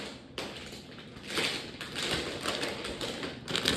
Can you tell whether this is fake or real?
real